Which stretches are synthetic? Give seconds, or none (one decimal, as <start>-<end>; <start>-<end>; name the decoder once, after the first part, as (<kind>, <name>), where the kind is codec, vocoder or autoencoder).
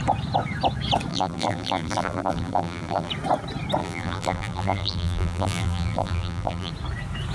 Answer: 1.1-3.1 (vocoder, BigVGAN v2); 3.8-6.7